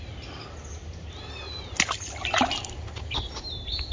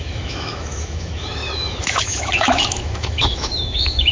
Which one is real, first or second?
first